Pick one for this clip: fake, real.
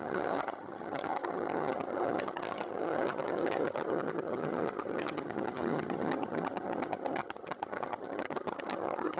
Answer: fake